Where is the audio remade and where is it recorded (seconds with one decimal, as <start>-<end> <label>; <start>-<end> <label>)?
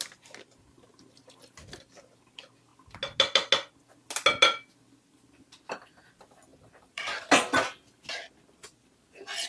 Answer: 0.0-6.5 recorded; 6.5-7.3 remade; 7.3-9.5 recorded